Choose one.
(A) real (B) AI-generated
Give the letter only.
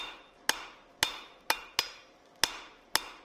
A